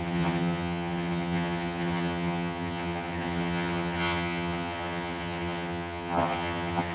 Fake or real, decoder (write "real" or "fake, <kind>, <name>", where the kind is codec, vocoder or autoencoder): fake, vocoder, HiFi-GAN